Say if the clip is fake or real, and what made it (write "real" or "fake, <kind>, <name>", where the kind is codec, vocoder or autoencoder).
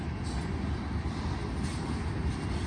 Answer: real